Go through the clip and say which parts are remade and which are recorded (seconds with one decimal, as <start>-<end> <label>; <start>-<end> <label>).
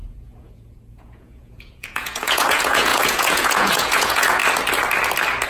0.0-4.4 remade; 4.4-5.5 recorded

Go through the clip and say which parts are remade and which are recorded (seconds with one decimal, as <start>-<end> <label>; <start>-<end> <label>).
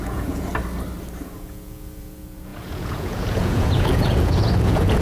0.0-0.5 remade; 0.5-1.3 recorded; 1.3-5.0 remade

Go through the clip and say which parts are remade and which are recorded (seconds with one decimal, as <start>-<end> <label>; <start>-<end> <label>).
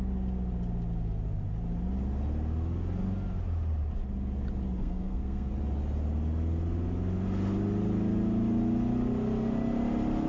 0.0-4.8 recorded; 4.8-5.5 remade; 5.5-10.3 recorded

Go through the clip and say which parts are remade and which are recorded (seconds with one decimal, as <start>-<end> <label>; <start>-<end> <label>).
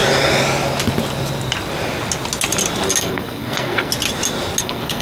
0.0-3.0 recorded; 3.0-3.9 remade; 3.9-4.6 recorded; 4.6-5.0 remade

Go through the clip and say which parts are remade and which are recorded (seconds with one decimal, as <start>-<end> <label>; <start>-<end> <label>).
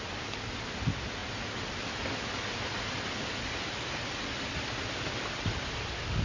0.0-6.2 recorded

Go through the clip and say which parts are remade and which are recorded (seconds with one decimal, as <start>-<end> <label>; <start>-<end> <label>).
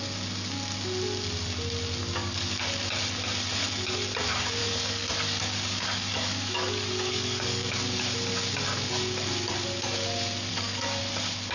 0.0-2.0 recorded; 2.0-2.6 remade; 2.6-4.6 recorded; 4.6-8.0 remade; 8.0-10.5 recorded; 10.5-11.0 remade; 11.0-11.5 recorded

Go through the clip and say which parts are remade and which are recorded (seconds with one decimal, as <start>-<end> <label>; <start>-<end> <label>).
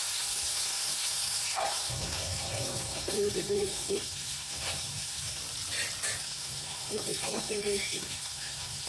0.0-5.4 remade; 5.4-6.2 recorded; 6.2-8.9 remade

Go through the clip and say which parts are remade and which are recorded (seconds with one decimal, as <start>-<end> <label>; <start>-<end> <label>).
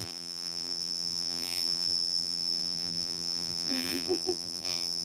0.0-5.0 remade